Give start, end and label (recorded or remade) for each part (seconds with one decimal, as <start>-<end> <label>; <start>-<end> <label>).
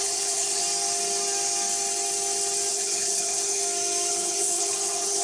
0.0-0.6 remade; 0.6-2.7 recorded; 2.7-3.6 remade; 3.6-4.1 recorded; 4.1-5.2 remade